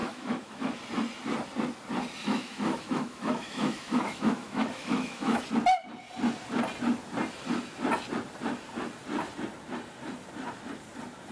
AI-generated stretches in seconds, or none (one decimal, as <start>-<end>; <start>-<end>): 0.0-0.8; 2.2-5.4